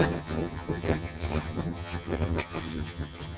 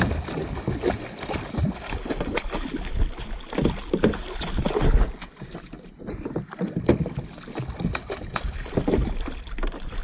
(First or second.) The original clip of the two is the second